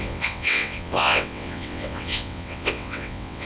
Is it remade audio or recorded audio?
remade